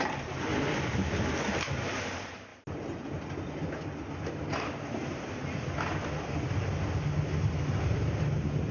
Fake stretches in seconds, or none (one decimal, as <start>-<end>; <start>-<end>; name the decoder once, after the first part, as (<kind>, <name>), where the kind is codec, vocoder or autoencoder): none